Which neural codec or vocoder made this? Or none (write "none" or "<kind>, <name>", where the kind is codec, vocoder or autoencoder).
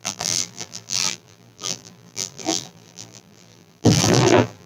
vocoder, BigVGAN v2